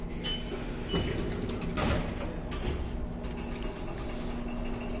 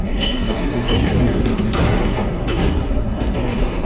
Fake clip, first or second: second